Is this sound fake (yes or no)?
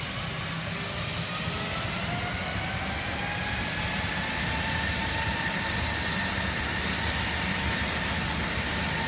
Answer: no